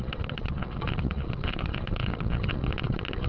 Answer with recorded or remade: remade